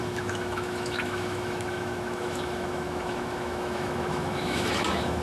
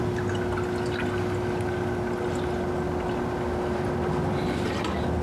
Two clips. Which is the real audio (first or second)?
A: second